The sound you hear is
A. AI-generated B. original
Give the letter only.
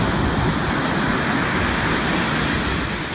B